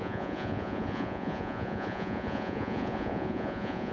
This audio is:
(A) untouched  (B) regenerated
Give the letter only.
B